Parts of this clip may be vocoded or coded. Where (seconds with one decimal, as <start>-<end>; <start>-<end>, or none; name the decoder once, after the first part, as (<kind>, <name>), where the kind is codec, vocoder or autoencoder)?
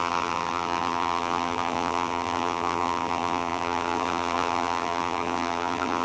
0.0-6.0 (vocoder, BigVGAN v2)